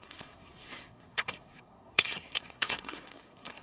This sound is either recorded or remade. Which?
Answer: remade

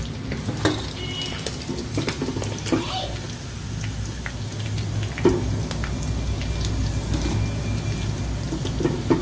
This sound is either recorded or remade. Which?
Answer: recorded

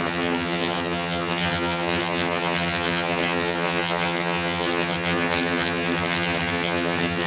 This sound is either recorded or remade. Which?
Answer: remade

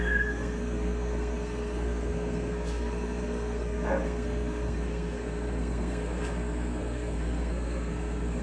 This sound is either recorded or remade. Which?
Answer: remade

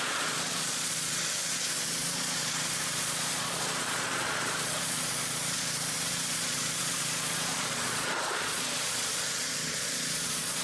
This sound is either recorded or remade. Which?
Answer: remade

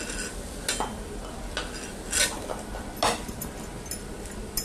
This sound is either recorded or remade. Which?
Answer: recorded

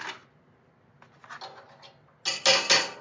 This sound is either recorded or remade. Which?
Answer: recorded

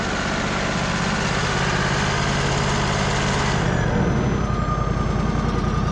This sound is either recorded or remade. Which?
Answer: recorded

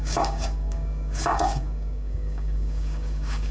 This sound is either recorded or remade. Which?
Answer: remade